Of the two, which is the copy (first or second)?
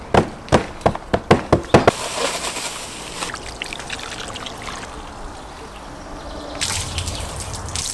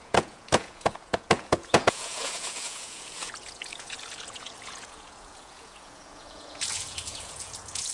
second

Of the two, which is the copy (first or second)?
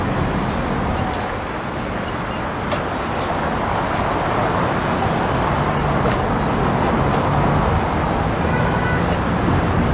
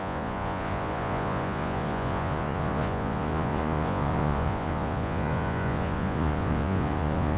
second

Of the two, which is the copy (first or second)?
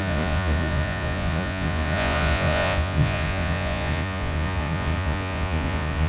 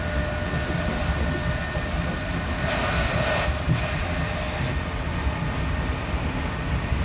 first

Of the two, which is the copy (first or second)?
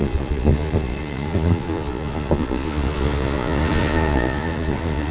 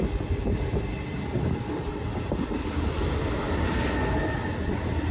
first